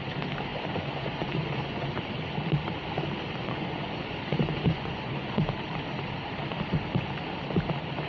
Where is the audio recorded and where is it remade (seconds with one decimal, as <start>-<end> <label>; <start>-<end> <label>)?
0.0-0.5 recorded; 0.5-2.0 remade; 2.0-3.4 recorded; 3.4-3.9 remade; 3.9-4.3 recorded; 4.3-5.4 remade; 5.4-8.1 recorded